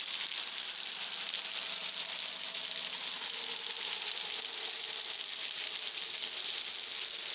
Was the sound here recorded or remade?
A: recorded